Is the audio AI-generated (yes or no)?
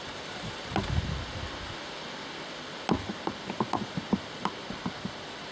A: no